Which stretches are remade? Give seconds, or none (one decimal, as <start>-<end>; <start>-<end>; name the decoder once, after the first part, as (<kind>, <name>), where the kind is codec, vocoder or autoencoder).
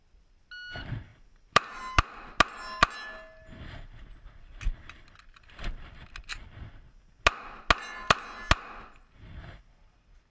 1.1-1.8 (vocoder, BigVGAN v2)